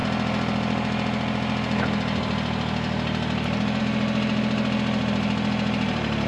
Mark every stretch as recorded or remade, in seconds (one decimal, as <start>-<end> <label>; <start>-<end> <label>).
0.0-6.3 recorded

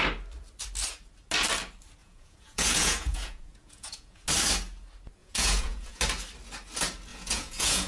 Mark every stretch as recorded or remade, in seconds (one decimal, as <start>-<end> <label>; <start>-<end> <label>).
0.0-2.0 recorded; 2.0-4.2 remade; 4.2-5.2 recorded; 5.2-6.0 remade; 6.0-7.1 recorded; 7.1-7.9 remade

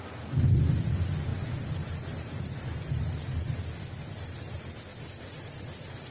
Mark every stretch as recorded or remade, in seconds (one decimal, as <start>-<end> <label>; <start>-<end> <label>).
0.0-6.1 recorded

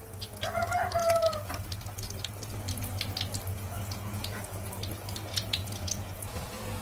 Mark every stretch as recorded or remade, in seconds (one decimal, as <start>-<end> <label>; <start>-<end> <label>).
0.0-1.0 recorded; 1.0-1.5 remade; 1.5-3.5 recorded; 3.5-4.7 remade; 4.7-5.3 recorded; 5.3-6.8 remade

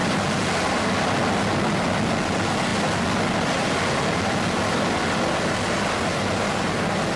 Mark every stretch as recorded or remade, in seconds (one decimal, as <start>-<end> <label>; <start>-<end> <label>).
0.0-7.2 recorded

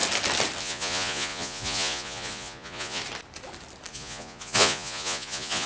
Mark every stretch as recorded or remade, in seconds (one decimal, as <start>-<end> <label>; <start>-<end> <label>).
0.0-0.6 recorded; 0.6-3.0 remade; 3.0-3.9 recorded; 3.9-5.7 remade